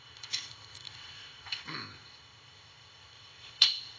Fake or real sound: fake